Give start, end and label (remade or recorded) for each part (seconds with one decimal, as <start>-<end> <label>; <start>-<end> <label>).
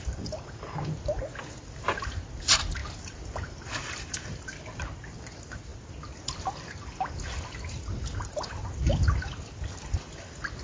0.0-2.8 recorded; 2.8-3.8 remade; 3.8-10.6 recorded